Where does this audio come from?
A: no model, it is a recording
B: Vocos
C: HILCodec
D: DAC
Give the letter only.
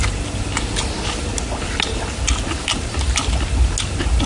A